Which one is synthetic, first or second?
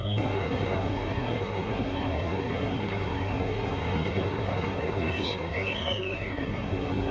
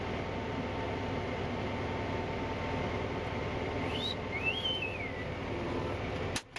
first